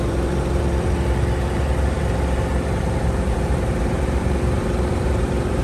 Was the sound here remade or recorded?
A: remade